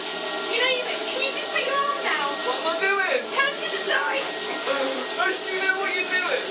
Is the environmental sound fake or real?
real